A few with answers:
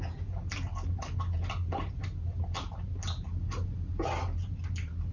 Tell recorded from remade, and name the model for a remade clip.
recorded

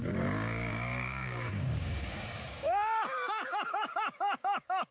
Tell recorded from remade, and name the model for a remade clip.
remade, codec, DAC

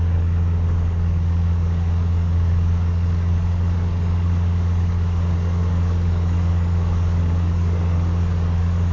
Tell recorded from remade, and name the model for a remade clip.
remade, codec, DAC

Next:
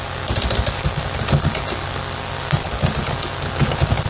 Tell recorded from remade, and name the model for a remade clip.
recorded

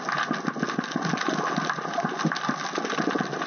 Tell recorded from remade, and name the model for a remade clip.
recorded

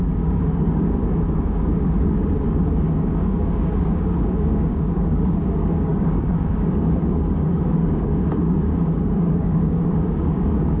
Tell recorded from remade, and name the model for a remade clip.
remade, codec, DAC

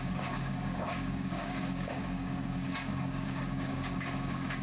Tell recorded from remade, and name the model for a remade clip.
remade, codec, DAC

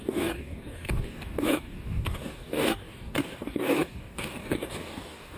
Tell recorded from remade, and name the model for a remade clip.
remade, codec, DAC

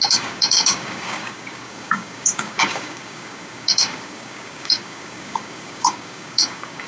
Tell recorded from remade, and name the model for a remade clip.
remade, codec, DAC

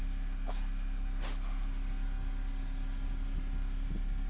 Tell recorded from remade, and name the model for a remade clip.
recorded